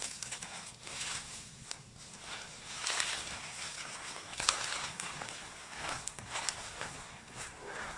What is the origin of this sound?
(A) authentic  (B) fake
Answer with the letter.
B